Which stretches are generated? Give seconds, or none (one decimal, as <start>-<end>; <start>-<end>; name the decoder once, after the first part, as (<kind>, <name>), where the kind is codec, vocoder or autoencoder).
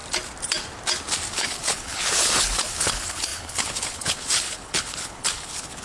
1.3-5.8 (codec, HILCodec)